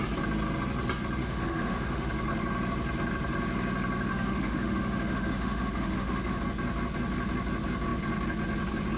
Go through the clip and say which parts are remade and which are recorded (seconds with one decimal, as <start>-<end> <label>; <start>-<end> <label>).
0.0-1.2 recorded; 1.2-2.1 remade; 2.1-4.1 recorded; 4.1-6.4 remade; 6.4-9.0 recorded